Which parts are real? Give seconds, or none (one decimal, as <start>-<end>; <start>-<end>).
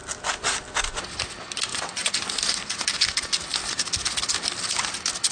0.0-1.7; 2.2-5.3